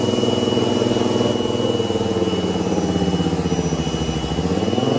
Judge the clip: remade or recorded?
recorded